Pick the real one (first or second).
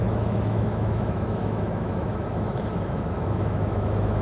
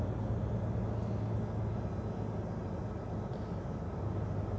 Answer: second